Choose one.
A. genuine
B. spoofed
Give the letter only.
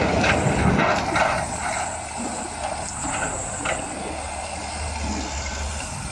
A